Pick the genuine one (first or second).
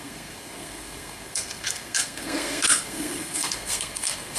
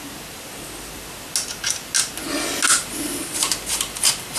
second